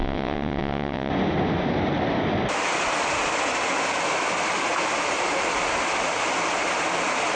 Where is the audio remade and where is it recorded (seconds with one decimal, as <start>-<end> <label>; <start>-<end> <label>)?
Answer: 0.0-1.1 remade; 1.1-7.3 recorded